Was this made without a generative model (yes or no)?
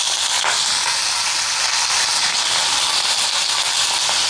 yes